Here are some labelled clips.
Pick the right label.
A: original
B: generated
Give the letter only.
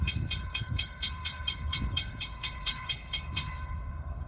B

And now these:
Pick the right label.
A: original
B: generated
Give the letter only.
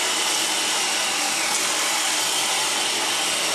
B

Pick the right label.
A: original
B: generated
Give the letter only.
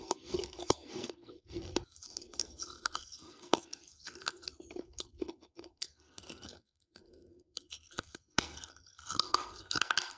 B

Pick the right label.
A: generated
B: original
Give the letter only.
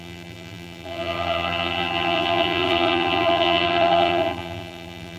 A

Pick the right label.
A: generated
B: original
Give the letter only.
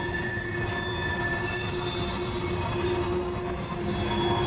B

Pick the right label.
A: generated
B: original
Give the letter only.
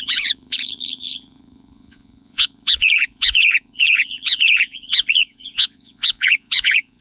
A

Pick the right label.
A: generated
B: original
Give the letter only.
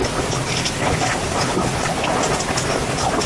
B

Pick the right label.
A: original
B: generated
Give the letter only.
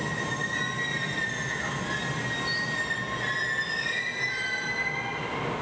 A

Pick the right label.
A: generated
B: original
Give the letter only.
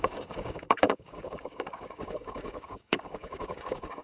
A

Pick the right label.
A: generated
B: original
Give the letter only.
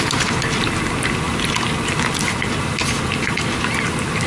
B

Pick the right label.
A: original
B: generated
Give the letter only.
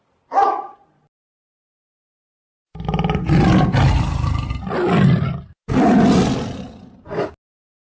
A